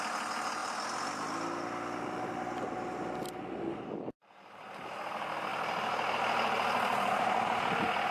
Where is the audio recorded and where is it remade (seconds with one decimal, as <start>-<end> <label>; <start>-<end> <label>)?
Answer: 0.0-8.1 recorded